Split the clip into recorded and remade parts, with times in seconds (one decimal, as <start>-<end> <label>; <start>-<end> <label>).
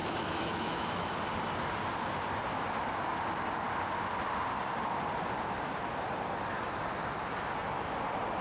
0.0-1.2 remade; 1.2-8.4 recorded